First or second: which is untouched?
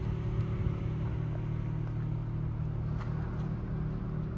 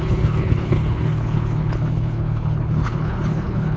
first